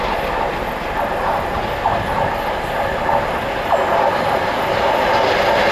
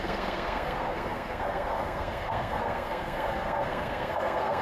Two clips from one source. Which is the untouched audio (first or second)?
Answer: first